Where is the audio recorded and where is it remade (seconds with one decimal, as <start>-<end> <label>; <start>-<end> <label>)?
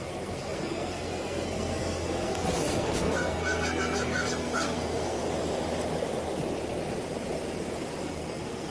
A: 0.0-5.2 remade; 5.2-8.0 recorded; 8.0-8.7 remade